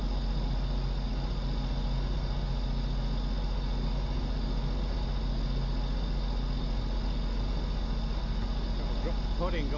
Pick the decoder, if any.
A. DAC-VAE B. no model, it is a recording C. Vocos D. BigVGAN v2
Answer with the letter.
B